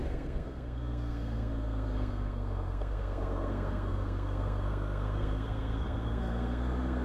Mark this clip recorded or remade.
remade